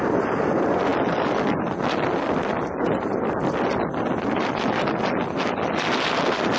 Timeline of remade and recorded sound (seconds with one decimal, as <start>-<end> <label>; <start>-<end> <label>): 0.0-6.6 recorded